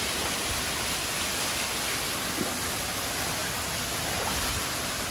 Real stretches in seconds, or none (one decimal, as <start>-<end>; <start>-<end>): 0.0-5.1